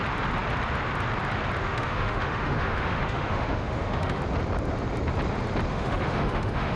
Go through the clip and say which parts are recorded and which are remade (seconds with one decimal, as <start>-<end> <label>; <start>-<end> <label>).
0.0-1.6 recorded; 1.6-4.2 remade; 4.2-5.7 recorded; 5.7-6.8 remade